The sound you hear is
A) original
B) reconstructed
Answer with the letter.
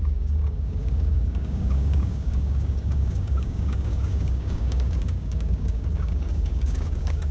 B